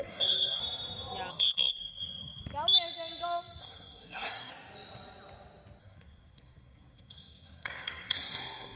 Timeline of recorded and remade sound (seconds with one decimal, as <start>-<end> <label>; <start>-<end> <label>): 0.0-0.6 remade; 0.6-1.3 recorded; 1.3-2.4 remade; 2.4-3.6 recorded; 3.6-4.5 remade; 4.5-5.8 recorded; 5.8-8.8 remade